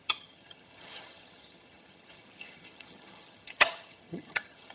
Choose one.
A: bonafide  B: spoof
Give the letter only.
B